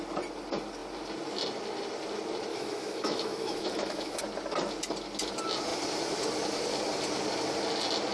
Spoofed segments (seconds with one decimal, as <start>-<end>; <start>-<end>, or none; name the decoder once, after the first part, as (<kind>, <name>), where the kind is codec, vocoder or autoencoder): 2.5-4.2 (autoencoder, DAC-VAE)